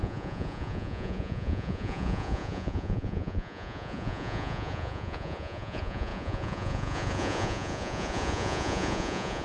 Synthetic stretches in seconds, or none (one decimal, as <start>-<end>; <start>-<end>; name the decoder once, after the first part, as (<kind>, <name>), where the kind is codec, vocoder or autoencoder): 0.0-9.4 (vocoder, Vocos)